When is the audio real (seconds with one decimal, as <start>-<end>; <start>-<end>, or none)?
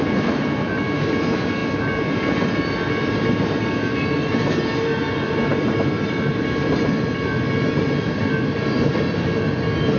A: 0.0-10.0